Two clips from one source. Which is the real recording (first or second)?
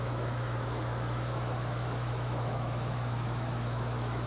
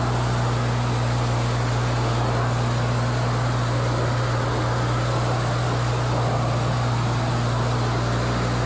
second